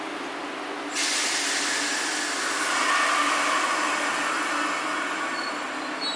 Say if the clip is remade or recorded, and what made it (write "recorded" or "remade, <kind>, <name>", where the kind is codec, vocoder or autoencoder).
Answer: recorded